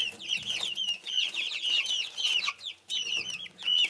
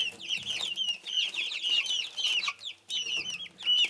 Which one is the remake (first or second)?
first